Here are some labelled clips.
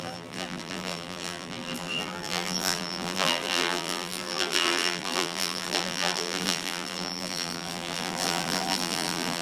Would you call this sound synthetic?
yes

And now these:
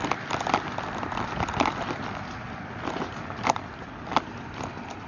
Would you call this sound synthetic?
no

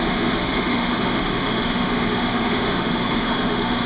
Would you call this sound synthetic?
yes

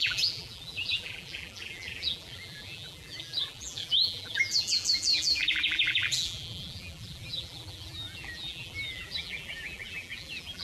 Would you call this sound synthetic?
yes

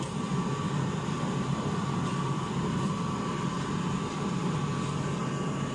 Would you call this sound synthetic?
no